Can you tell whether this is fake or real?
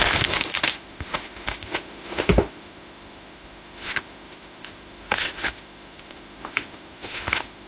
fake